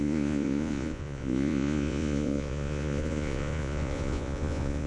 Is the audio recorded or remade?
remade